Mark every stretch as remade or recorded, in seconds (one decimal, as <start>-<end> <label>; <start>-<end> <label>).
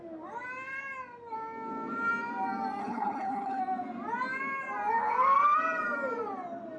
0.0-2.8 recorded; 2.8-3.6 remade; 3.6-6.8 recorded